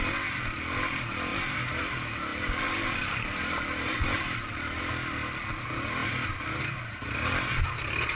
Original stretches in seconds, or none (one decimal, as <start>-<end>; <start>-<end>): 0.0-1.3; 1.8-2.3; 4.8-8.1